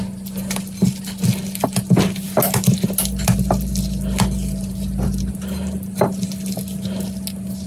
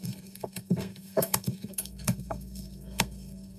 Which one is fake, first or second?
second